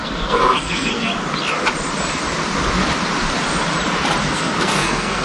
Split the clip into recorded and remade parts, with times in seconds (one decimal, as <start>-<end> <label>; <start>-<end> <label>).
0.0-1.1 remade; 1.1-4.2 recorded; 4.2-5.2 remade